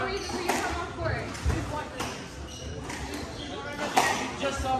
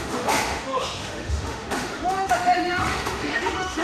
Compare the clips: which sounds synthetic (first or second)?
second